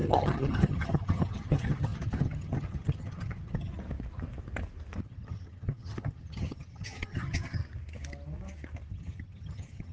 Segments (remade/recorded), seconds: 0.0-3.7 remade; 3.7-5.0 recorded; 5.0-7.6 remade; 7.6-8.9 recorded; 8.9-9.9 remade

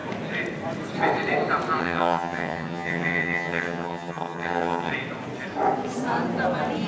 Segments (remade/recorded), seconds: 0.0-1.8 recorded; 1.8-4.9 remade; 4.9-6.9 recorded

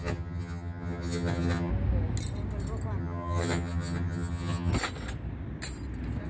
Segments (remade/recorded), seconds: 0.0-1.7 remade; 1.7-3.0 recorded; 3.0-4.7 remade; 4.7-6.3 recorded

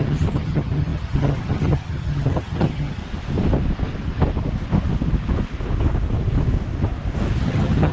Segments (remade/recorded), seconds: 0.0-3.0 remade; 3.0-7.4 recorded; 7.4-7.9 remade

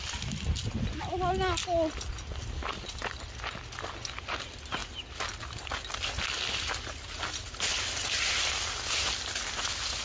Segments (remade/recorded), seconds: 0.0-10.0 recorded

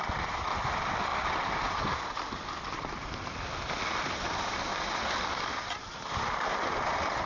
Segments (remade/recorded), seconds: 0.0-7.3 recorded

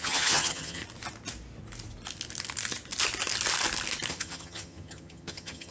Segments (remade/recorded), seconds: 0.0-0.8 remade; 0.8-4.1 recorded; 4.1-5.7 remade

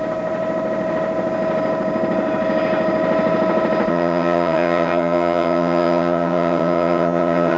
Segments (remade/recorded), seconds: 0.0-3.9 recorded; 3.9-7.6 remade